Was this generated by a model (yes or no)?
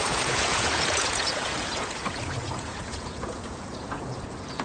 yes